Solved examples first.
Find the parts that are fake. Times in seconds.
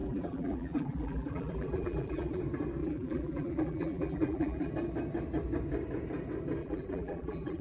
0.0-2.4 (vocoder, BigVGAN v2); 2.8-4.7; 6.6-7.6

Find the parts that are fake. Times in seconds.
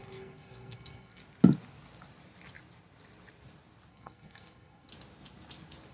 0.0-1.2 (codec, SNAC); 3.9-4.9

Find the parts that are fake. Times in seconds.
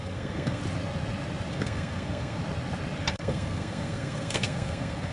0.0-0.6 (codec, SNAC); 1.5-2.4; 3.0-5.1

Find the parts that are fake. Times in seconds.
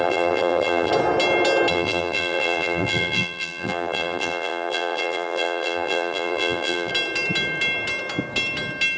0.0-0.9 (vocoder, BigVGAN v2); 1.7-6.9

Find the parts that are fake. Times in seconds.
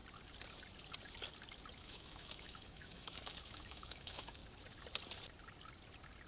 1.8-4.4 (autoencoder, DAC-VAE)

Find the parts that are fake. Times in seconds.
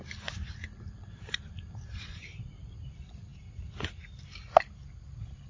0.0-3.3 (vocoder, BigVGAN v2)